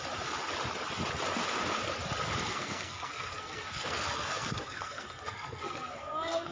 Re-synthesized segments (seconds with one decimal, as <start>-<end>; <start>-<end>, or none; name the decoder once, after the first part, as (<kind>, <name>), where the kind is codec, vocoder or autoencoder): 2.5-6.5 (codec, SNAC)

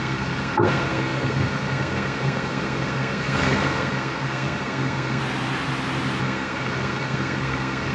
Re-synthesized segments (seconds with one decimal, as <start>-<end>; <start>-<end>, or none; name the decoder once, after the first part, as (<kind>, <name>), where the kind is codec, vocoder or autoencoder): 0.0-5.2 (codec, SNAC); 6.2-7.9

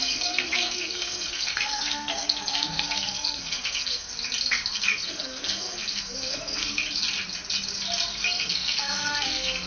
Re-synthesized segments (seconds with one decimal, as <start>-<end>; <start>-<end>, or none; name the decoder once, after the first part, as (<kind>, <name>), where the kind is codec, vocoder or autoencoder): 0.0-4.1 (codec, SNAC); 4.7-6.8; 8.1-9.7

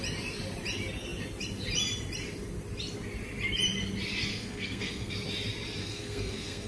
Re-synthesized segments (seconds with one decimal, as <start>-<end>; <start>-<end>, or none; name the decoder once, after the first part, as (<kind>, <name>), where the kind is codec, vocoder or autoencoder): 4.3-5.1 (codec, SNAC); 5.8-6.7

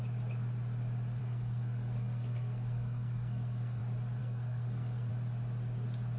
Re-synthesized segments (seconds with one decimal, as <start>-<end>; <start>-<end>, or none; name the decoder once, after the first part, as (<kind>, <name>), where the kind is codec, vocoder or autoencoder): 1.2-3.8 (codec, SNAC); 4.2-5.1

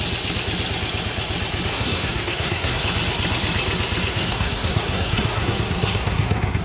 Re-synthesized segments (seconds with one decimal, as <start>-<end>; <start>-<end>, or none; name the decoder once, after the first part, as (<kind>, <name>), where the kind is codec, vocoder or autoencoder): 1.7-2.8 (codec, SNAC); 4.1-6.6

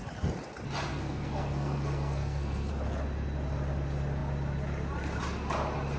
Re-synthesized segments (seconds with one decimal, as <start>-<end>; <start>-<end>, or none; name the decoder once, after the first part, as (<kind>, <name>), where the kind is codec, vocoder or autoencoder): 0.9-2.7 (codec, SNAC)

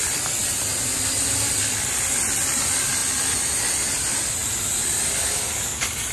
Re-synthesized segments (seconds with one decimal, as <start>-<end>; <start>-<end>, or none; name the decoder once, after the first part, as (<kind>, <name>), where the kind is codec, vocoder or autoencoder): none